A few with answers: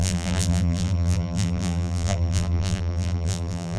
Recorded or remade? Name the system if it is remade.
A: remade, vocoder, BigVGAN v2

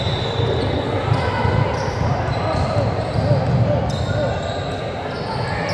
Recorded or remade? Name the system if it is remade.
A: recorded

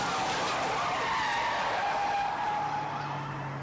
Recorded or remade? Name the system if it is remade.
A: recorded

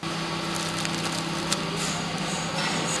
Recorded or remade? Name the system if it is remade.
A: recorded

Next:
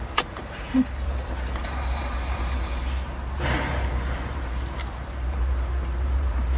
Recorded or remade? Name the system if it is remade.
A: remade, vocoder, BigVGAN v2